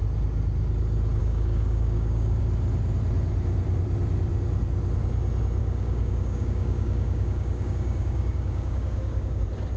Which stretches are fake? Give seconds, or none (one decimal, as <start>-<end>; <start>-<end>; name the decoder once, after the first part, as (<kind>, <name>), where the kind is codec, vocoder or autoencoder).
1.2-2.4 (codec, DAC); 5.6-9.4